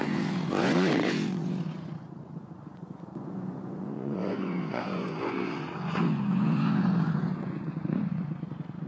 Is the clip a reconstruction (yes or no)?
yes